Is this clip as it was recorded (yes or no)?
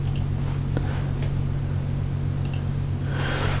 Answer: yes